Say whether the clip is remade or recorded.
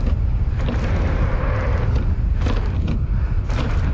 recorded